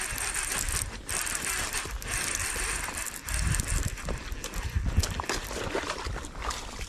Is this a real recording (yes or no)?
yes